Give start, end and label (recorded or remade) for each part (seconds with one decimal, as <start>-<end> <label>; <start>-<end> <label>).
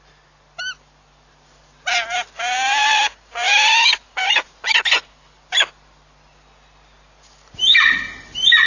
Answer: 0.0-8.7 recorded